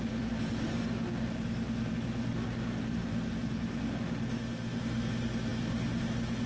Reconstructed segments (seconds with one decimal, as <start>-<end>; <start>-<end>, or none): none